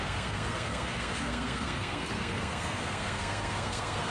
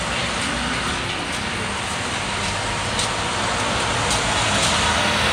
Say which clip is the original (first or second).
second